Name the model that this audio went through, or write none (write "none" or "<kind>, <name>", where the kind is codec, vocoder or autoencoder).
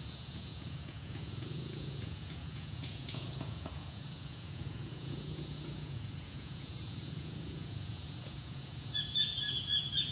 vocoder, Vocos